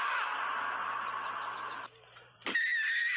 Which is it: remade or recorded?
remade